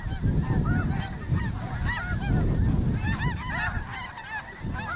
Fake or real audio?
real